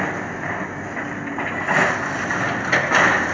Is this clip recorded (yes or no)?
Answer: yes